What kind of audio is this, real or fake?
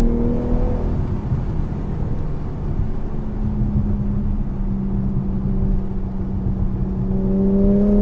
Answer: real